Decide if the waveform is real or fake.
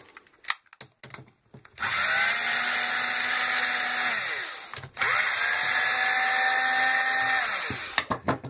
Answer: real